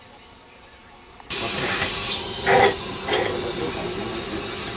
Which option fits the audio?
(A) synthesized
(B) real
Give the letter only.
A